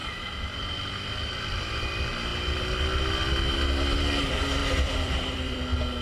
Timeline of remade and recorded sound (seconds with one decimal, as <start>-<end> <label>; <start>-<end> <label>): 0.0-1.6 remade; 1.6-4.6 recorded; 4.6-5.6 remade; 5.6-6.0 recorded